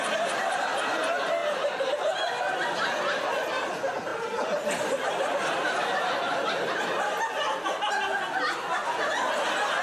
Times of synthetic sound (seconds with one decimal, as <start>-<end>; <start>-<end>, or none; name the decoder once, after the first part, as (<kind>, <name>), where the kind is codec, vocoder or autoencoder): 1.4-2.5 (vocoder, BigVGAN v2)